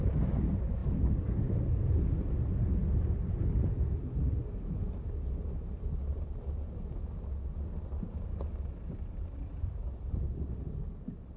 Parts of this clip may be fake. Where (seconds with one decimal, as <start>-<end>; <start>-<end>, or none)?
none